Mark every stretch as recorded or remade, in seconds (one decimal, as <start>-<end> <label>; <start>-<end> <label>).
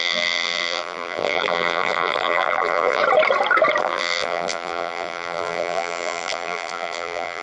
0.0-3.0 remade; 3.0-3.8 recorded; 3.8-7.4 remade